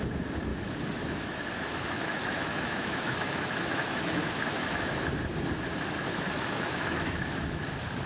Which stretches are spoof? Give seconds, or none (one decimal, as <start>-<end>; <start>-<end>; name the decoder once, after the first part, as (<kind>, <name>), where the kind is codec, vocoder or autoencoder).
0.5-5.2 (autoencoder, DAC-VAE); 6.0-7.6